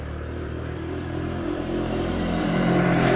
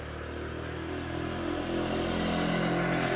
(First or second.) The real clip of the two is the second